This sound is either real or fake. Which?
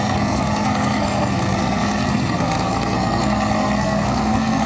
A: fake